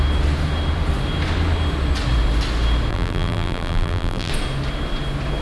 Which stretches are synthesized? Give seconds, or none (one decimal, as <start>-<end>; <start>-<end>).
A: 2.9-4.3